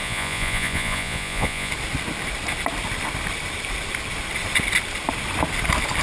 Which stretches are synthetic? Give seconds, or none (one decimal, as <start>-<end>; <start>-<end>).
0.0-1.7